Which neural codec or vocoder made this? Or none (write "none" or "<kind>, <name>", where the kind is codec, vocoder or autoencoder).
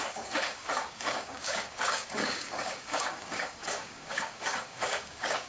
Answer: codec, DAC